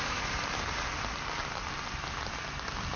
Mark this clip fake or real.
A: real